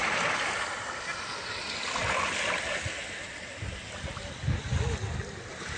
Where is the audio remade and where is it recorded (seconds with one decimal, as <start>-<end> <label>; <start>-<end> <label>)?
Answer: 0.0-5.8 recorded